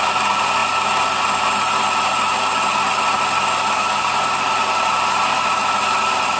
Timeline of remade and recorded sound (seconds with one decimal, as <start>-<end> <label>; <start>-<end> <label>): 0.0-6.4 recorded